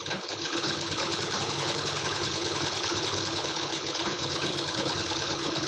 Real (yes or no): no